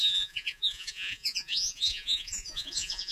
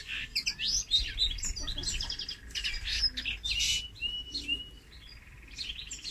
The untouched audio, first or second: second